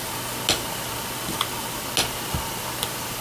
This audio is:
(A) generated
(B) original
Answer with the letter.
B